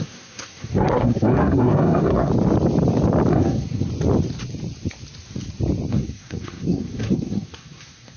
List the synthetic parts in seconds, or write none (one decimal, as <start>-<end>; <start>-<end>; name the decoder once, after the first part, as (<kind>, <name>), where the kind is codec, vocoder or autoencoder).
0.0-2.3 (codec, SNAC); 3.3-3.9; 5.9-8.2